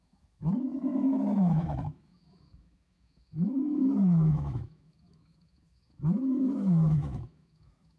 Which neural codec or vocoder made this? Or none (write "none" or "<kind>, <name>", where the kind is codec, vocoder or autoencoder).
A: autoencoder, DAC-VAE